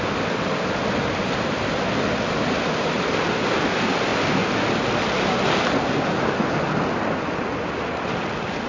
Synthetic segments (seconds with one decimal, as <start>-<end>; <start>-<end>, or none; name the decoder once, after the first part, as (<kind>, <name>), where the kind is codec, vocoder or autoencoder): none